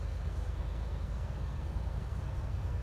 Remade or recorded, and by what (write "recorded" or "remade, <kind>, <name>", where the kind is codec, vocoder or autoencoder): remade, codec, SNAC